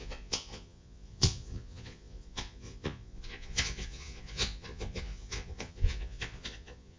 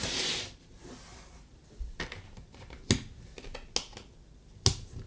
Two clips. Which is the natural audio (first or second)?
second